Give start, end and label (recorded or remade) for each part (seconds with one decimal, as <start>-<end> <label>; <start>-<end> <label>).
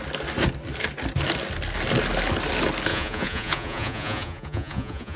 0.0-2.9 recorded; 2.9-5.2 remade